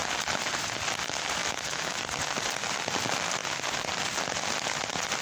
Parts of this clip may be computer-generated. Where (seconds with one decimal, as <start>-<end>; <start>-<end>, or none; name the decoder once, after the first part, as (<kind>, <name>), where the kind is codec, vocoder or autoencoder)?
1.4-2.0 (autoencoder, DAC-VAE)